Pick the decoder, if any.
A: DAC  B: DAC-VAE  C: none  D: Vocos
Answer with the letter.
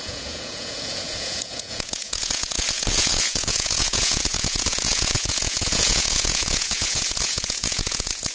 D